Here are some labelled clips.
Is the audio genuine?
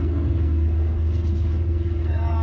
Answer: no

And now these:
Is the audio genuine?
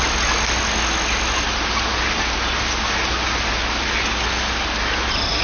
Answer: yes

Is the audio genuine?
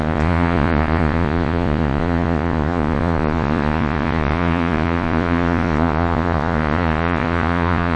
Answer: no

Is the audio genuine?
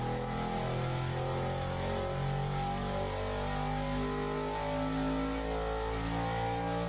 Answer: yes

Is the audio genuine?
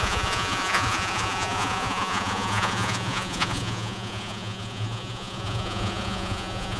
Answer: no